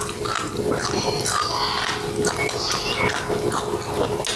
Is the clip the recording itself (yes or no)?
yes